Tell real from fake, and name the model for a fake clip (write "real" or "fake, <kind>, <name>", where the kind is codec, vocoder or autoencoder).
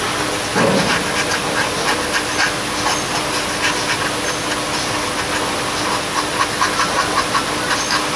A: real